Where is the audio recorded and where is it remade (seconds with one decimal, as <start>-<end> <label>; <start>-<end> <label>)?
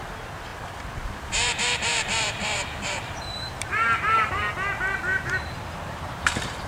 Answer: 0.0-0.5 recorded; 0.5-4.5 remade; 4.5-5.1 recorded; 5.1-6.7 remade